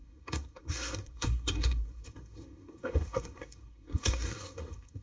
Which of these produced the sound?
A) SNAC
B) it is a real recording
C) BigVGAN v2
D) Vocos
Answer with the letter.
A